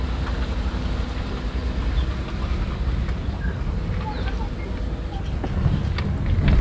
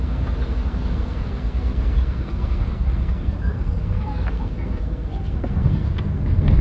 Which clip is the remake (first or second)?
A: second